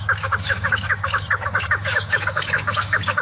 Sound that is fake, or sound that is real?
fake